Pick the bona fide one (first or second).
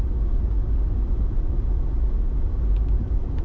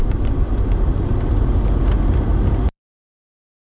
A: first